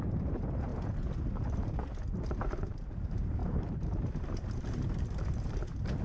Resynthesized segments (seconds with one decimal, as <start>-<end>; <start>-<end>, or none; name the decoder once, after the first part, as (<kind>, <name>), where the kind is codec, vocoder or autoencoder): 0.0-0.7 (vocoder, BigVGAN v2); 2.2-6.0